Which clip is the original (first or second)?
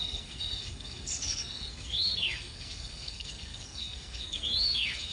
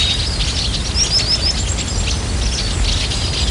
second